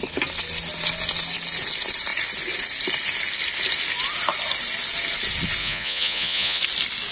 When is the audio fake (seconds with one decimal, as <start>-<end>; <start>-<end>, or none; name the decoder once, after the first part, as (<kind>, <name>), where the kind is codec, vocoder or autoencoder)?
5.6-6.6 (vocoder, Vocos)

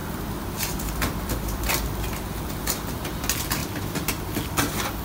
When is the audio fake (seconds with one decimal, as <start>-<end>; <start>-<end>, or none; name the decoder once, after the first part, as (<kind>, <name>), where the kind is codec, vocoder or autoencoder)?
0.0-3.0 (vocoder, BigVGAN v2)

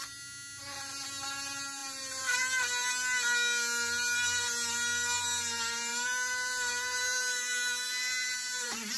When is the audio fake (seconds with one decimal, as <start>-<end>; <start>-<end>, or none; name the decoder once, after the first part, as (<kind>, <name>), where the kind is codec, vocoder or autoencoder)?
1.8-2.6 (vocoder, BigVGAN v2); 5.9-9.0

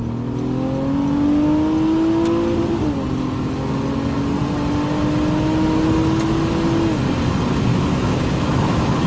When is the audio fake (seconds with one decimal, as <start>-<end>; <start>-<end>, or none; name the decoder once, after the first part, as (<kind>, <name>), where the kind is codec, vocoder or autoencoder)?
7.7-9.1 (autoencoder, DAC-VAE)